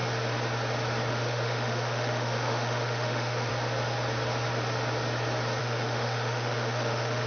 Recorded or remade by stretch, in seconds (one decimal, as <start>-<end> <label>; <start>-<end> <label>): 0.0-1.1 recorded; 1.1-3.5 remade; 3.5-5.6 recorded; 5.6-7.3 remade